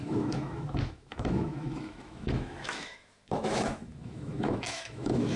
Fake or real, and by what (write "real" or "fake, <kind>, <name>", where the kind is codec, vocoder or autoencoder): fake, autoencoder, DAC-VAE